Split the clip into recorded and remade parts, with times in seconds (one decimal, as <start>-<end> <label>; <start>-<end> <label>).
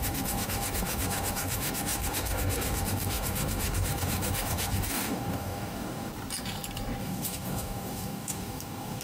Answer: 0.0-6.1 remade; 6.1-7.0 recorded; 7.0-9.0 remade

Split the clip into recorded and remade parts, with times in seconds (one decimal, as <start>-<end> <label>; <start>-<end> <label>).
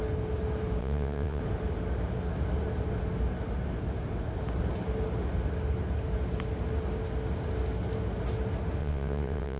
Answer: 0.0-0.8 recorded; 0.8-1.4 remade; 1.4-8.8 recorded; 8.8-9.6 remade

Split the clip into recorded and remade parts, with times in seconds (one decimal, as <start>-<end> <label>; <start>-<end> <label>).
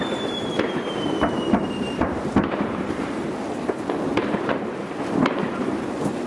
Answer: 0.0-4.8 remade; 4.8-5.6 recorded; 5.6-6.3 remade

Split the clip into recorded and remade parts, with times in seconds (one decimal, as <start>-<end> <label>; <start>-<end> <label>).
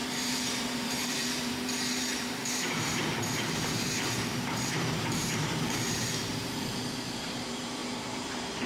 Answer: 0.0-8.7 remade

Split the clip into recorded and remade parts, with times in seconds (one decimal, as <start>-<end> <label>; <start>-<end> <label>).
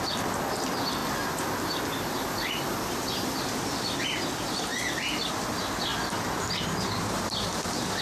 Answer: 0.0-8.0 recorded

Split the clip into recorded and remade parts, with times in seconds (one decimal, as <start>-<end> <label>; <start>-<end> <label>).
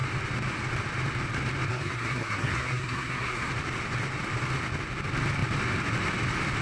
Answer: 0.0-1.7 recorded; 1.7-3.5 remade; 3.5-6.6 recorded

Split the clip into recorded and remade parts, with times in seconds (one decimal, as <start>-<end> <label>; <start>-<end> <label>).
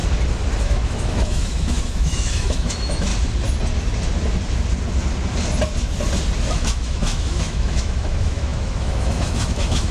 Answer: 0.0-0.6 recorded; 0.6-3.1 remade; 3.1-6.4 recorded; 6.4-9.9 remade